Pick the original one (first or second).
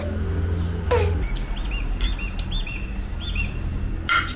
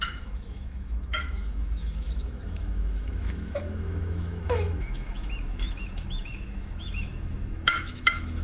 first